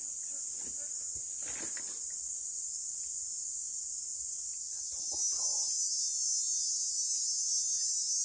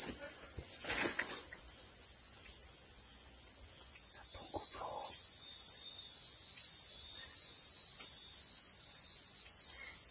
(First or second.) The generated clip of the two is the second